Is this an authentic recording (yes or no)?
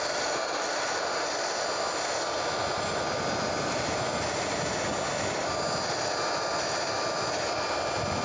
yes